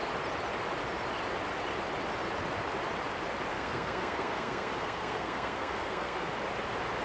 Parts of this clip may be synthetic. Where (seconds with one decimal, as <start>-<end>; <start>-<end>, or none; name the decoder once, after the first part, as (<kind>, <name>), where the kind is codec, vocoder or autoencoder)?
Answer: 3.5-6.3 (codec, SNAC)